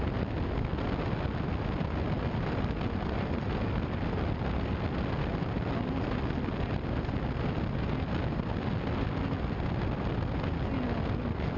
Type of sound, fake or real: real